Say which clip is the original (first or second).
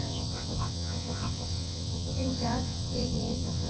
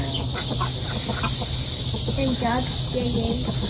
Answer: second